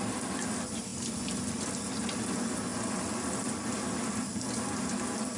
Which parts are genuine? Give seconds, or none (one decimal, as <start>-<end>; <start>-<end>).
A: 0.0-0.9; 1.8-5.4